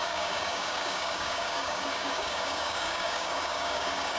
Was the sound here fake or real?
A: fake